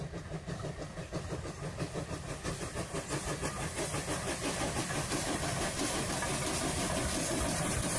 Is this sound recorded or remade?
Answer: recorded